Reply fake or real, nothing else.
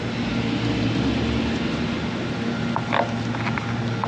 real